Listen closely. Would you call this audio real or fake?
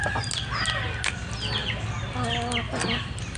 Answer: real